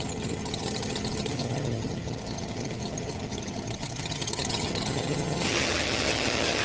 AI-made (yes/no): yes